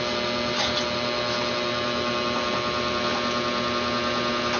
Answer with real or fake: real